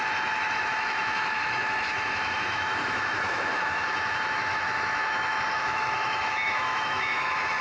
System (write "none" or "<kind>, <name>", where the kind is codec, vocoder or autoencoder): autoencoder, DAC-VAE